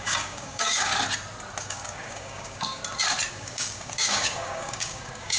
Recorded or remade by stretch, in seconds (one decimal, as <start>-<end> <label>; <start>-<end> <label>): 0.0-0.9 remade; 0.9-1.6 recorded; 1.6-2.8 remade; 2.8-3.3 recorded; 3.3-5.4 remade